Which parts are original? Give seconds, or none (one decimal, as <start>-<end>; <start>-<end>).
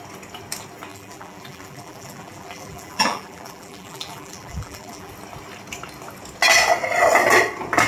0.0-0.9; 5.1-7.9